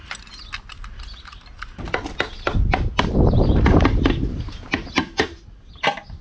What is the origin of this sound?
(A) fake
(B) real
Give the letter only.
B